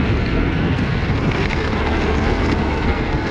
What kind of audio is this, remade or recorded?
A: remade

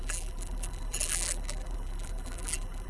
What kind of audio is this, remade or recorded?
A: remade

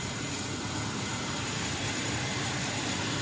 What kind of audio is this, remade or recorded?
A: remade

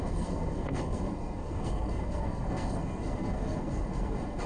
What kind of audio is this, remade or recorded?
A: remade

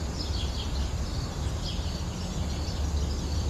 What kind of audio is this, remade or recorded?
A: recorded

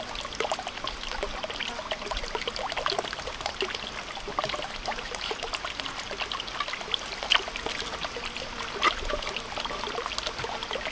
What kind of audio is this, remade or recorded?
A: recorded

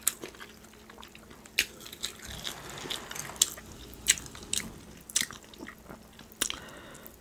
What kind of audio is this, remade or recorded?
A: recorded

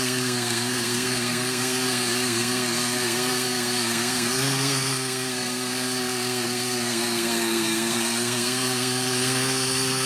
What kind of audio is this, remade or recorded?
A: remade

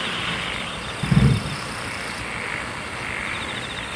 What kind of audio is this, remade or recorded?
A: recorded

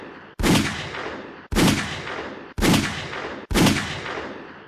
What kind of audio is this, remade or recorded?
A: recorded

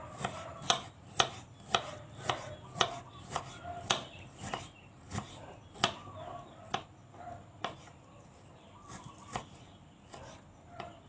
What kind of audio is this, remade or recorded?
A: recorded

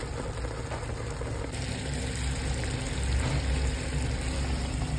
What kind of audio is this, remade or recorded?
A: recorded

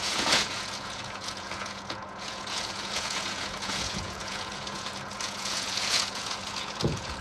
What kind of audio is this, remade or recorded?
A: remade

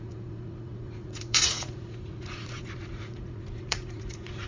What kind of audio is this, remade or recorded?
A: remade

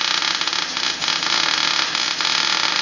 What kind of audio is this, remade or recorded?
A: recorded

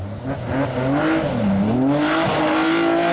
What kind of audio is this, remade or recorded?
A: recorded